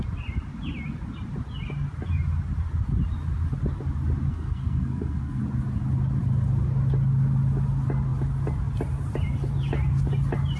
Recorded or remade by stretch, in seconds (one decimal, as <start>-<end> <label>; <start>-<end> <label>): 0.0-4.3 recorded; 4.3-5.4 remade; 5.4-10.6 recorded